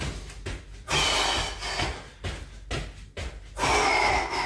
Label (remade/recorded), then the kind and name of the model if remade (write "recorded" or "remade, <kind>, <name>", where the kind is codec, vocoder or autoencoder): recorded